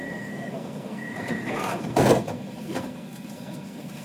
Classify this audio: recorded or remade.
remade